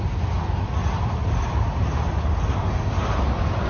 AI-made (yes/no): no